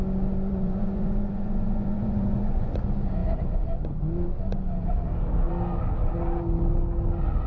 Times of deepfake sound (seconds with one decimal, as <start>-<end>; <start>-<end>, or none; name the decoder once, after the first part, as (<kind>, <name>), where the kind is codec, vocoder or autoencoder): 0.5-2.8 (vocoder, Vocos)